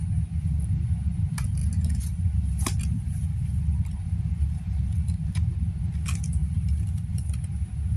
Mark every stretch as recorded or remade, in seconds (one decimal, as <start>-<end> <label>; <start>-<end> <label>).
0.0-1.6 recorded; 1.6-5.5 remade; 5.5-8.0 recorded